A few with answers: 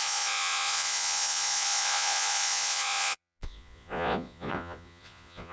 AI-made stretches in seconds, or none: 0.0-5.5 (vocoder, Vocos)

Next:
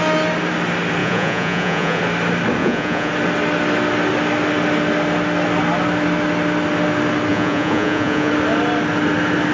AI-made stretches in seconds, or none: 1.0-2.0 (vocoder, Vocos); 2.6-3.1; 7.3-8.3